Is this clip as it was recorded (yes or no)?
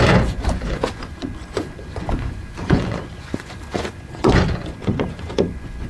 no